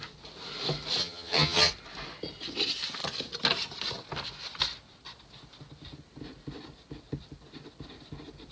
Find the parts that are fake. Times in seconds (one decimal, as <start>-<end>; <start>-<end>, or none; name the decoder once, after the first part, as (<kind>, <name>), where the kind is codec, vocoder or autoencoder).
1.0-1.7 (vocoder, HiFi-GAN)